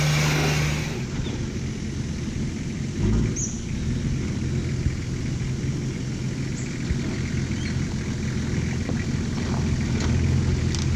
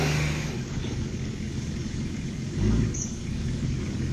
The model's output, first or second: second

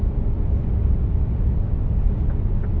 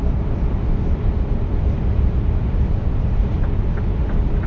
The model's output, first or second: second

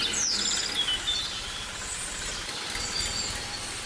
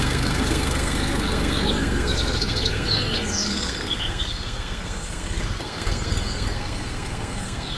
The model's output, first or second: second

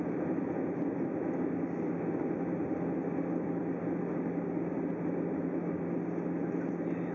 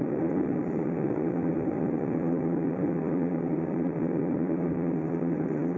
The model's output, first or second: second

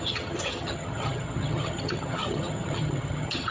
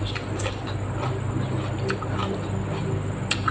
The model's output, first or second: first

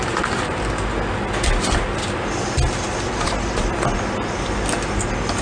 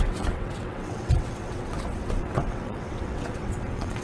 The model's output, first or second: second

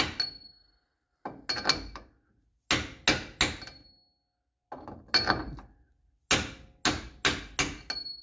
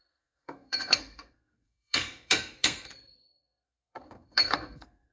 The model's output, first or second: second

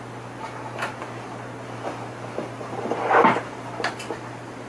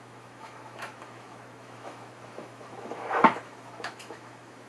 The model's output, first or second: second